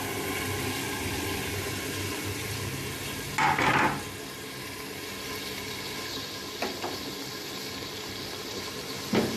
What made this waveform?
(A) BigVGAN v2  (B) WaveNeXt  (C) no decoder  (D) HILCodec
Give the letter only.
C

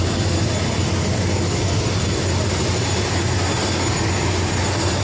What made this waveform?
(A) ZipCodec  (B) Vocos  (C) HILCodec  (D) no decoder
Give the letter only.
D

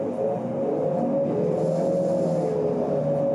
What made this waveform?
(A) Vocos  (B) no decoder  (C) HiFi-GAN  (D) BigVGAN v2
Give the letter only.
B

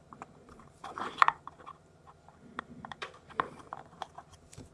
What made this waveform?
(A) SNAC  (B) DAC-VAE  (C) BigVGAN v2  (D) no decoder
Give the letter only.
C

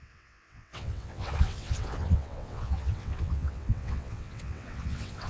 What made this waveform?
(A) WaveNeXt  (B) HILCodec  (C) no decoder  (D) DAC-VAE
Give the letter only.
A